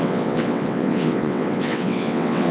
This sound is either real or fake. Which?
fake